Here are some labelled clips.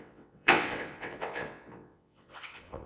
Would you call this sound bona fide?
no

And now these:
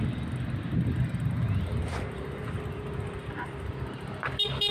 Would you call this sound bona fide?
yes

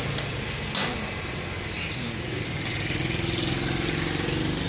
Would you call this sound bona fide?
yes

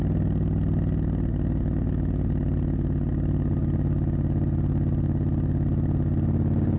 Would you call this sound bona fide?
yes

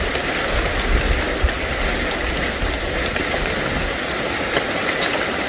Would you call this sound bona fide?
yes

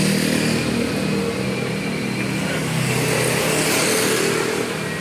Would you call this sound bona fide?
yes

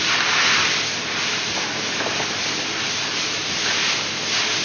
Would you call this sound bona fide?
yes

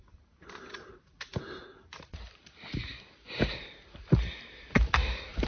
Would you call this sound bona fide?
no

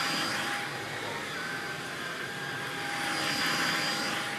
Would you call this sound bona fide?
yes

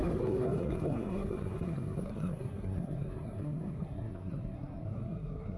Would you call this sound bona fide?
no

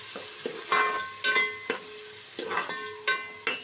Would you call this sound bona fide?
yes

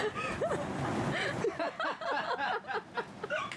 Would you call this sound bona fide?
yes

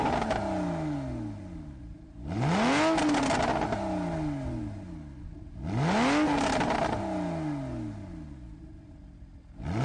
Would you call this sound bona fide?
yes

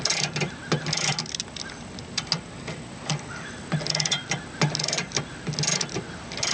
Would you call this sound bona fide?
yes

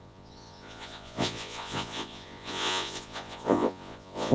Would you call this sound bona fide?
no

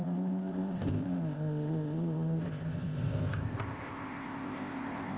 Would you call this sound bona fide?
no